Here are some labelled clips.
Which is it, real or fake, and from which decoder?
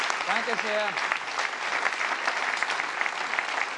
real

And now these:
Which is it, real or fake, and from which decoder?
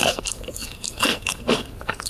fake, codec, SNAC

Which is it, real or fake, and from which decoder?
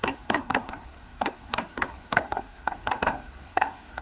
fake, codec, SNAC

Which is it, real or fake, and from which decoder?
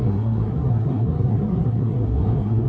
fake, codec, SNAC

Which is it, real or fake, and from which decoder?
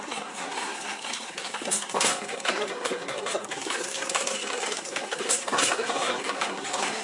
fake, codec, SNAC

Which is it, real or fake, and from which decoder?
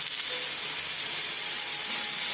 real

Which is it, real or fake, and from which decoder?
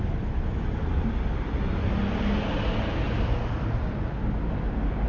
real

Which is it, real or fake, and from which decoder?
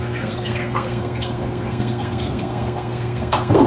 fake, codec, SNAC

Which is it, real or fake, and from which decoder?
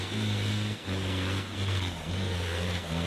fake, codec, SNAC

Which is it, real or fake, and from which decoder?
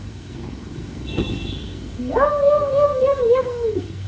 fake, codec, SNAC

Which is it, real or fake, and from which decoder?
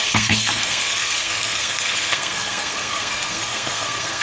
fake, codec, SNAC